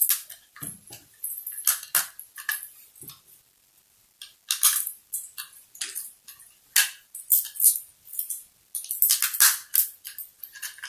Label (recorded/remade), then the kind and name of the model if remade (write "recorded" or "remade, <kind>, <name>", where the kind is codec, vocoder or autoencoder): recorded